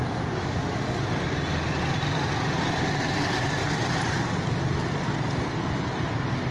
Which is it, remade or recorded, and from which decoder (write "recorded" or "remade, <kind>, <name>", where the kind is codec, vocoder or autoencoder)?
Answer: recorded